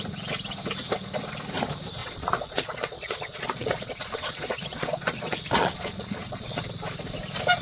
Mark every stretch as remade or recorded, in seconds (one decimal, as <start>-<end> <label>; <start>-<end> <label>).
0.0-2.0 recorded; 2.0-6.6 remade; 6.6-7.6 recorded